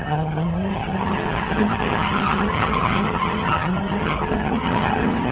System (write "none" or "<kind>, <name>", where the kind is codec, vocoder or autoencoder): vocoder, HiFi-GAN